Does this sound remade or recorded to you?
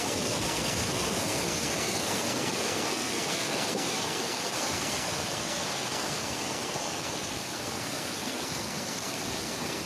remade